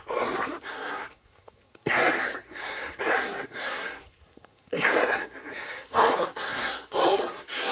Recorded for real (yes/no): no